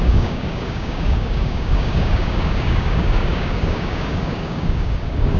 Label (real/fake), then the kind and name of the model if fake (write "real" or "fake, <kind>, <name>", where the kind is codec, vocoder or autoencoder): fake, codec, DAC